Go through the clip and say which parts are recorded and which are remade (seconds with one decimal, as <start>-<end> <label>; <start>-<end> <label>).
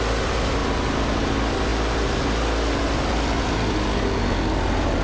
0.0-5.0 recorded